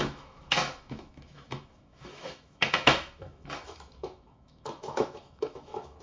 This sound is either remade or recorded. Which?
remade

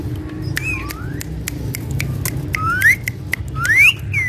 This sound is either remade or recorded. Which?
recorded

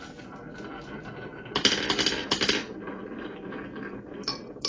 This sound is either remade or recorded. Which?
recorded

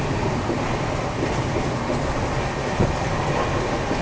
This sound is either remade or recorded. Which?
recorded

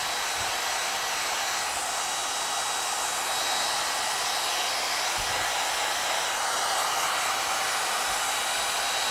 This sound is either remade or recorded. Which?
recorded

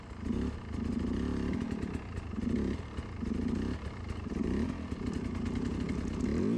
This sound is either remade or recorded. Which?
recorded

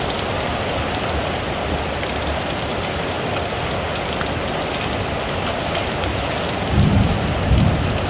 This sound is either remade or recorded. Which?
recorded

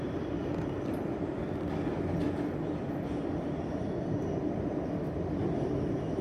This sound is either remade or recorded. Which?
recorded